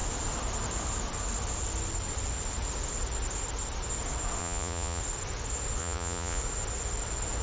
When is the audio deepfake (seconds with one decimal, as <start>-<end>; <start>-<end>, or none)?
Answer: 4.4-5.0; 5.8-6.4